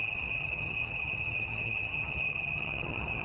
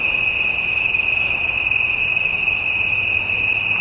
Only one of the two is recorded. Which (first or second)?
second